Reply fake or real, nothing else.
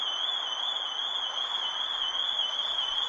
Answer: real